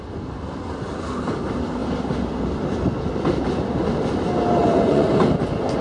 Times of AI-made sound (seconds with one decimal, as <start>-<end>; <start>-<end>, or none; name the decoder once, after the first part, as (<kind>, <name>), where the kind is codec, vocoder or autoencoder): 4.6-5.1 (vocoder, Vocos)